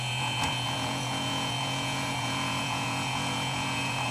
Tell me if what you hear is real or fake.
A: fake